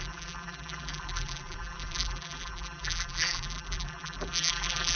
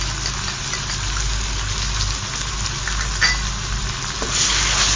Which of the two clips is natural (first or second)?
second